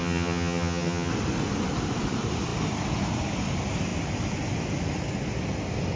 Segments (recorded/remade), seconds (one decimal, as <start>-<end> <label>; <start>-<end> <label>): 0.0-1.1 remade; 1.1-6.0 recorded